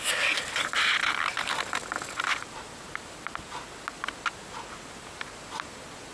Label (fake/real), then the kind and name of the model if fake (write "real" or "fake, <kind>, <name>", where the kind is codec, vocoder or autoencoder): real